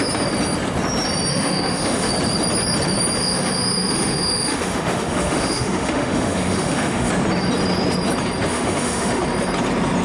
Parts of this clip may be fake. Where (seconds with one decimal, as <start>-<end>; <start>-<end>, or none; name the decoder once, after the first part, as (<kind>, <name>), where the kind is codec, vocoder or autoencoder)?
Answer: 1.3-2.1 (autoencoder, DAC-VAE); 3.2-7.1; 8.5-9.2